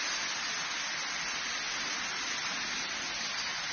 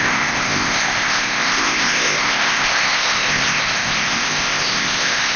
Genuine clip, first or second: first